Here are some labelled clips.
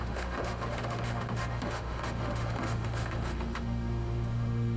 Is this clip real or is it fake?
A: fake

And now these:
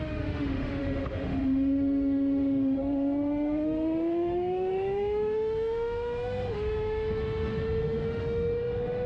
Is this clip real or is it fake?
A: fake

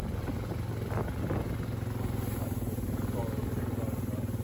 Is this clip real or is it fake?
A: real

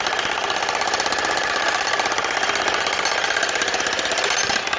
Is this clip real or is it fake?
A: real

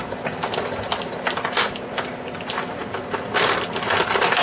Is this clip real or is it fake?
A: real